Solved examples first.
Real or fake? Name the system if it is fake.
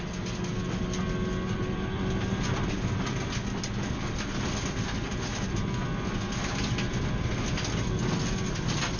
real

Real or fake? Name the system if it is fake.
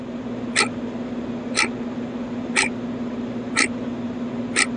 real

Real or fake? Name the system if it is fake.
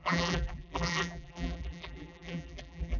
fake, vocoder, BigVGAN v2